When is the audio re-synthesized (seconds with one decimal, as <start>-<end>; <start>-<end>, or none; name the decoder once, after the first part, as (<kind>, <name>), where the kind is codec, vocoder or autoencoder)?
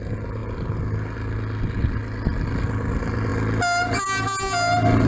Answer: none